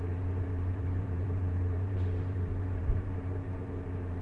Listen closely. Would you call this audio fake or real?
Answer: fake